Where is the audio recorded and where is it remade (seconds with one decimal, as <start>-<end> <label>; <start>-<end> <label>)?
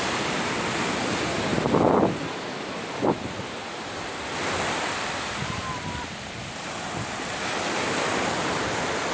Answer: 0.0-9.1 recorded